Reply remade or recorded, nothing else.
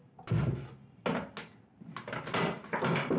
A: recorded